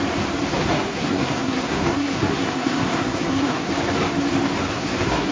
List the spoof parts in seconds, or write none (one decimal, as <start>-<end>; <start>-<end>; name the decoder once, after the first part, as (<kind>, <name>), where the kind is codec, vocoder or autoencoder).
0.5-3.7 (codec, SNAC); 4.7-5.3